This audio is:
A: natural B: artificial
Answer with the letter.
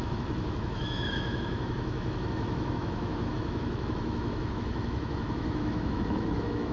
B